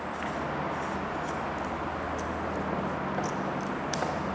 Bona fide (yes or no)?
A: yes